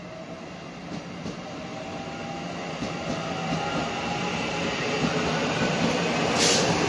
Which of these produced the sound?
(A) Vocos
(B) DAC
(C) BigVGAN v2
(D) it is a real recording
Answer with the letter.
D